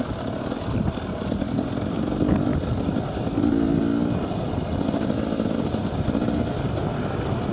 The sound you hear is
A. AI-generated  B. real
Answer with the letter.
B